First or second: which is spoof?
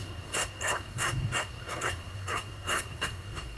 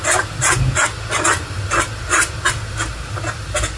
first